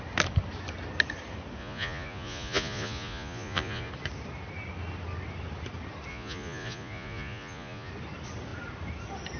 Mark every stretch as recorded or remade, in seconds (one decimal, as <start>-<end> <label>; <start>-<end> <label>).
0.0-1.6 recorded; 1.6-3.9 remade; 3.9-6.1 recorded; 6.1-7.9 remade; 7.9-9.4 recorded